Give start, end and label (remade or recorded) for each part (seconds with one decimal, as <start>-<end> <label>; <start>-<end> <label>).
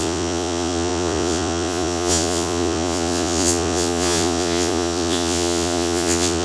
0.0-6.4 remade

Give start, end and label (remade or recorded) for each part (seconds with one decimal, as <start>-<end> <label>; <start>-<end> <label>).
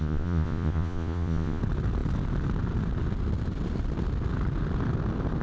0.0-1.6 remade; 1.6-5.4 recorded